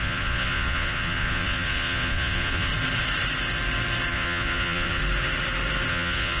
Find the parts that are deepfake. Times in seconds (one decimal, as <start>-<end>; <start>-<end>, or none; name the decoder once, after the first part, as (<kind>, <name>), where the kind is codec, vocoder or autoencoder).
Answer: 0.0-2.7 (vocoder, Vocos); 4.1-5.0; 5.9-6.4